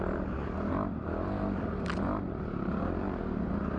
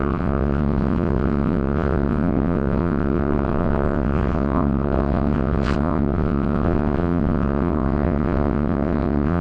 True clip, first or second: first